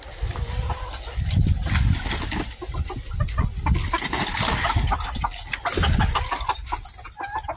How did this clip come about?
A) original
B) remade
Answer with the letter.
A